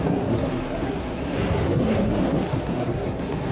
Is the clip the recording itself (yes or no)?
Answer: no